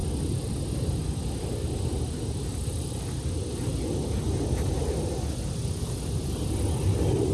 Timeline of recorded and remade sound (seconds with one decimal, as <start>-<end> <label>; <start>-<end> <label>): 0.0-7.3 recorded